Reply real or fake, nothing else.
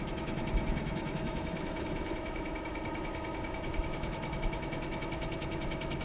fake